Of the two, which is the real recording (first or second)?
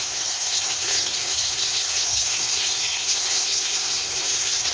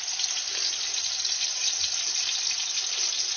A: second